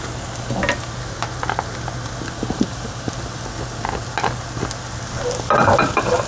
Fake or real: real